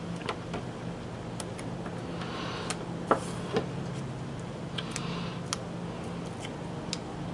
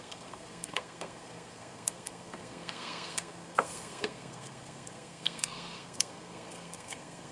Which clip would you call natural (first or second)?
first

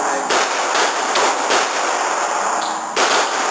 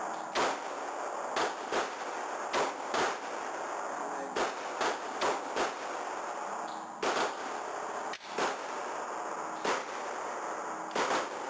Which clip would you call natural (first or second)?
second